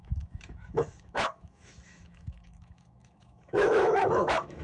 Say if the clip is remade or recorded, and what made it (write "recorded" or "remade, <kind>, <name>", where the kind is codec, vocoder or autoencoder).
remade, autoencoder, DAC-VAE